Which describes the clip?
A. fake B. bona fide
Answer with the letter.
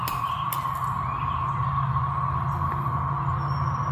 B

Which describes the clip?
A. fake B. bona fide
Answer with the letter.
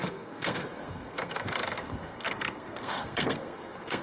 A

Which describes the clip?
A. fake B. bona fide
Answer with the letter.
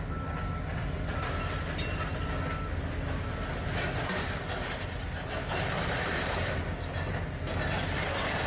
B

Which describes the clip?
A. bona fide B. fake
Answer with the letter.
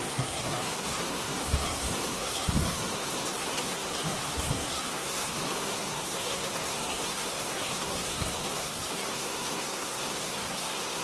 B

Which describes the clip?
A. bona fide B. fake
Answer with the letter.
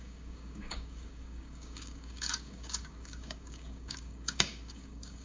B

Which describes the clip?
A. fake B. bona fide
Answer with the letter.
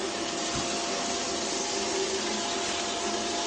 B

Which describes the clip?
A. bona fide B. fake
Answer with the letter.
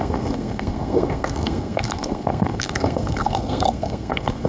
B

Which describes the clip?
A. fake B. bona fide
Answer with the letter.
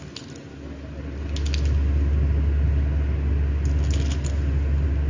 B